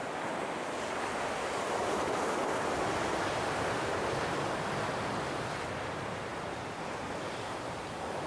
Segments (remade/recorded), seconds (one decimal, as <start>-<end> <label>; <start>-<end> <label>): 0.0-8.3 recorded